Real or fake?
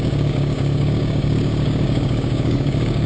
fake